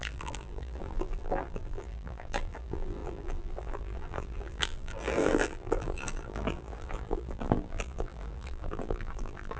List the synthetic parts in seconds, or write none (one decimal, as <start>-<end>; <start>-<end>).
0.0-9.6